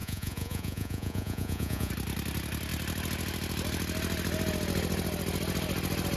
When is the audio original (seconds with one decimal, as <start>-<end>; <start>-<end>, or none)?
1.9-6.2